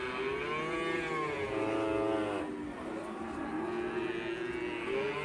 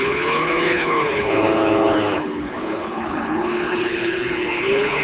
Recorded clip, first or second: first